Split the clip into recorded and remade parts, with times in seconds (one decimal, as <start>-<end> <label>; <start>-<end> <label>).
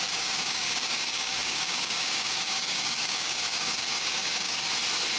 0.0-4.7 remade; 4.7-5.2 recorded